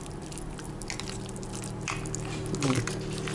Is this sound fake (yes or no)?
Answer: no